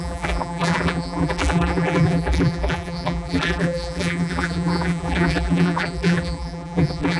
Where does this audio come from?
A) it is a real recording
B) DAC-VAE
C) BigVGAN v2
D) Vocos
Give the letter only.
C